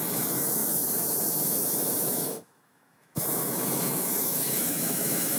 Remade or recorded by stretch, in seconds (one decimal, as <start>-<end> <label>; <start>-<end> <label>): 0.0-5.4 remade